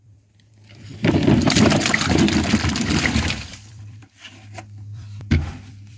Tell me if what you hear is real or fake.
fake